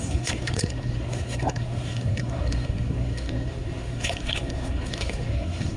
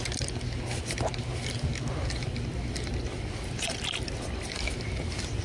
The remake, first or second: first